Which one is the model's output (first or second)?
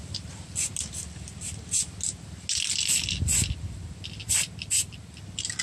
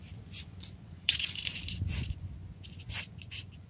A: second